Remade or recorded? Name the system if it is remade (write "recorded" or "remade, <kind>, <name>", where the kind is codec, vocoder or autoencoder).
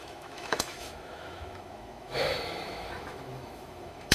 remade, autoencoder, DAC-VAE